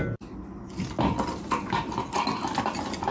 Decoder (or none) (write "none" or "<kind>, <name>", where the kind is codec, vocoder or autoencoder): none